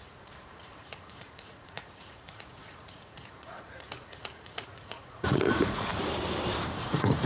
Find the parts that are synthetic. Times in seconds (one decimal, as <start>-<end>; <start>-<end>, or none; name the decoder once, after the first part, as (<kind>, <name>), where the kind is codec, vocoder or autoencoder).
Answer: 0.0-5.9 (vocoder, Vocos); 6.7-7.3